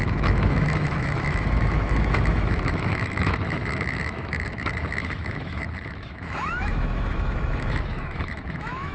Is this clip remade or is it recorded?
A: remade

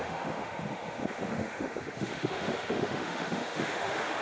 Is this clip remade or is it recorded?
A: remade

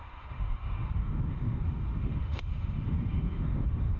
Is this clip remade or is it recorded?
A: remade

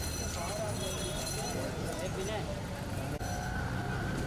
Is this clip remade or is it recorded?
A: recorded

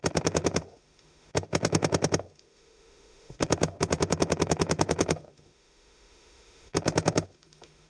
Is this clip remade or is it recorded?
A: remade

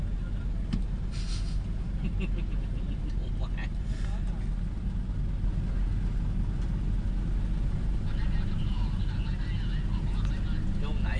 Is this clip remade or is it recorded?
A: recorded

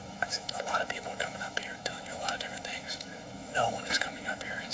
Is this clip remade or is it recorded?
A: remade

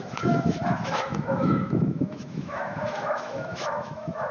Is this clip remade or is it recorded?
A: remade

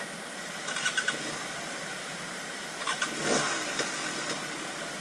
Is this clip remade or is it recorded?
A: recorded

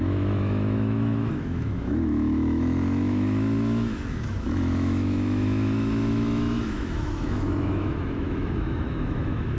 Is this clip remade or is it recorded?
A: remade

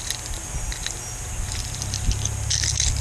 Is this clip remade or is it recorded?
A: recorded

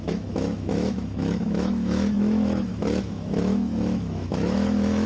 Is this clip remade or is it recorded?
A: remade